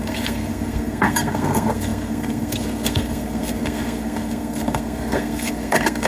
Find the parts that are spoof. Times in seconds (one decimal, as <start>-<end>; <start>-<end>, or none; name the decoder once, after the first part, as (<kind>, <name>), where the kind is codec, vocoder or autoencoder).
0.0-6.1 (codec, SNAC)

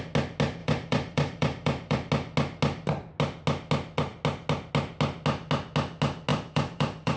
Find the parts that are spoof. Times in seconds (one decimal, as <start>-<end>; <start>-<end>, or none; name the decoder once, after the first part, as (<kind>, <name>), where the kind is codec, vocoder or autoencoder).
0.6-2.1 (vocoder, BigVGAN v2); 6.3-7.2